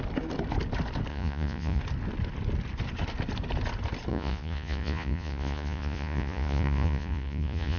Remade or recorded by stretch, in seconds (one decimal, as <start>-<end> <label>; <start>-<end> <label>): 0.0-1.1 recorded; 1.1-1.8 remade; 1.8-4.1 recorded; 4.1-7.8 remade